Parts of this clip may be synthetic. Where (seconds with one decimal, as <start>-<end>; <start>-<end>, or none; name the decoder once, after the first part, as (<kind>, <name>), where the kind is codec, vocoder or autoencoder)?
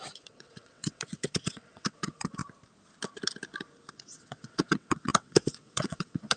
0.0-2.4 (vocoder, WaveNeXt); 3.9-6.4